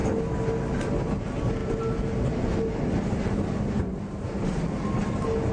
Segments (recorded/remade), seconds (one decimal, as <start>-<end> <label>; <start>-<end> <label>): 0.0-5.5 recorded